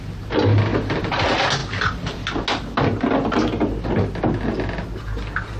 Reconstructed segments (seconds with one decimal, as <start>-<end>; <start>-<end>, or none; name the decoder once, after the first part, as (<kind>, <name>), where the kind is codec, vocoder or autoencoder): none